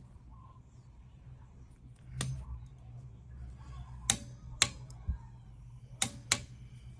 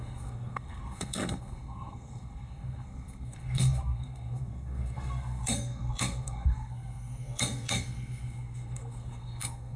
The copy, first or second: second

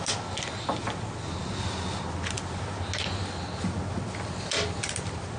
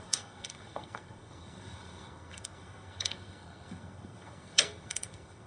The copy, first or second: second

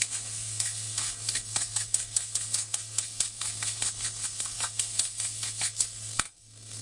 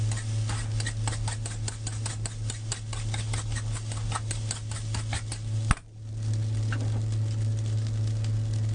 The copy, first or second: first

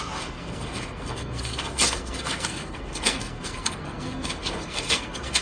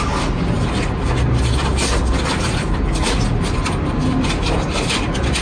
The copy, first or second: first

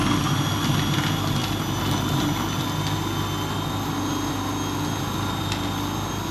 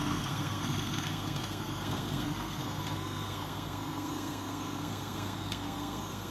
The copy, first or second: second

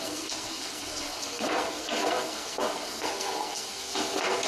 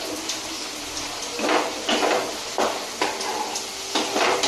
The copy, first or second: first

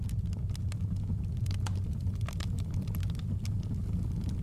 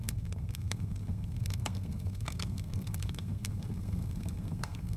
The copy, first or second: second